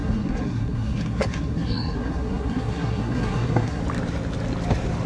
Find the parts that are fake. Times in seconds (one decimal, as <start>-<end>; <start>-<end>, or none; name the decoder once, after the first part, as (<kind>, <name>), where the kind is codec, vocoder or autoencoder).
0.0-3.8 (codec, SNAC)